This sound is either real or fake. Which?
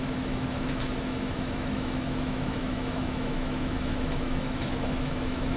fake